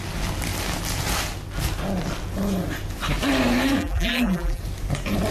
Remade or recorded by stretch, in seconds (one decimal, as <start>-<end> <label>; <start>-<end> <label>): 0.0-3.8 recorded; 3.8-4.6 remade; 4.6-5.3 recorded